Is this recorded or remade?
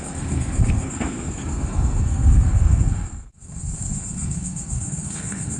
remade